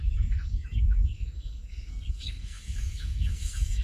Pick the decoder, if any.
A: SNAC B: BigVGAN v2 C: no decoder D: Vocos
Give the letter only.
A